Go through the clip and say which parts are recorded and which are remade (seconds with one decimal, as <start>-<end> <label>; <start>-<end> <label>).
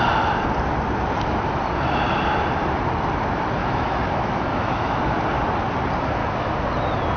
0.0-3.6 recorded; 3.6-5.0 remade; 5.0-6.2 recorded; 6.2-6.7 remade; 6.7-7.2 recorded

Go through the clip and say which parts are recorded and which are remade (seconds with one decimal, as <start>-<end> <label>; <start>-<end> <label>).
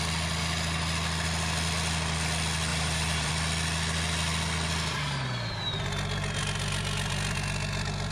0.0-2.7 recorded; 2.7-3.3 remade; 3.3-8.1 recorded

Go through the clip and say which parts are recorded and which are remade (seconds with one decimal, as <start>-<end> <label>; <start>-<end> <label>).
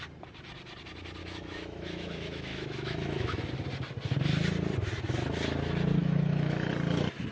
0.0-1.2 recorded; 1.2-3.5 remade; 3.5-6.0 recorded; 6.0-6.7 remade; 6.7-7.3 recorded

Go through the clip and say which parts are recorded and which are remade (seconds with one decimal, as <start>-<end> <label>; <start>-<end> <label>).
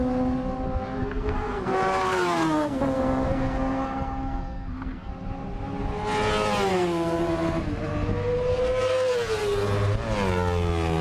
0.0-1.0 recorded; 1.0-5.1 remade; 5.1-6.7 recorded; 6.7-7.2 remade; 7.2-8.5 recorded; 8.5-9.1 remade; 9.1-11.0 recorded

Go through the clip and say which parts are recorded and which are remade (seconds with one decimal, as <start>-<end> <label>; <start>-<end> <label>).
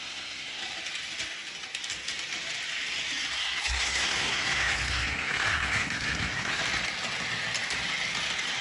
0.0-0.6 remade; 0.6-3.4 recorded; 3.4-6.6 remade; 6.6-8.6 recorded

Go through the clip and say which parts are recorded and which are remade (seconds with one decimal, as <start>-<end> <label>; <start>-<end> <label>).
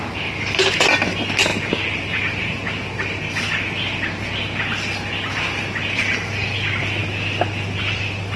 0.0-8.4 recorded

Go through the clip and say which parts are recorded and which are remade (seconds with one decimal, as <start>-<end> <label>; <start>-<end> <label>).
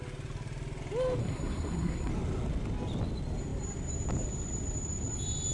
0.0-1.2 recorded; 1.2-2.1 remade; 2.1-5.5 recorded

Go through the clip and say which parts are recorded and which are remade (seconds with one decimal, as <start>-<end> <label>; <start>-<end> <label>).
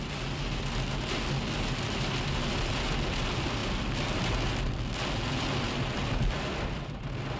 0.0-7.4 recorded